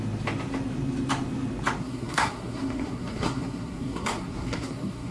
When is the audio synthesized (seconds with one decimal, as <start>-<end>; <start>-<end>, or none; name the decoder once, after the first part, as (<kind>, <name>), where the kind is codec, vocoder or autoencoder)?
1.8-5.1 (codec, SNAC)